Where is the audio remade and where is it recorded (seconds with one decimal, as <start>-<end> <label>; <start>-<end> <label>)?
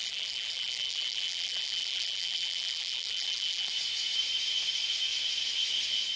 0.0-3.7 remade; 3.7-6.2 recorded